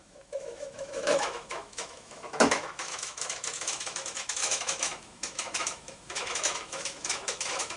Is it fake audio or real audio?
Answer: fake